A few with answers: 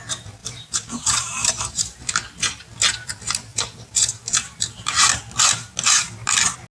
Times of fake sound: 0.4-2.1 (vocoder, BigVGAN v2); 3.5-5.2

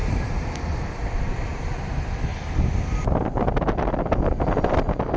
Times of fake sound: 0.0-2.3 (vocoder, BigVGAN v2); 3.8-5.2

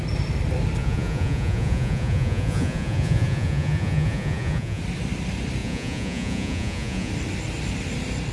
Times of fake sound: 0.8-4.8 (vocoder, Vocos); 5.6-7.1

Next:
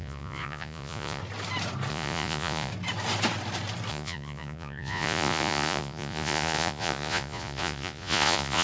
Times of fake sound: 0.0-1.2 (vocoder, Vocos); 1.9-2.7; 3.9-8.6